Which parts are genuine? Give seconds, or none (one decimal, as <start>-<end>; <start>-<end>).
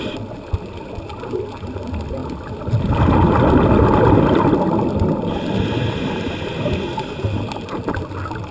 0.0-8.5